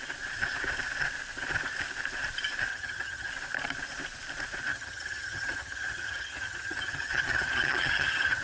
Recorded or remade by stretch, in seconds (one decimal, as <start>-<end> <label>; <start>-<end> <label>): 0.0-2.7 recorded; 2.7-3.3 remade; 3.3-4.7 recorded; 4.7-8.4 remade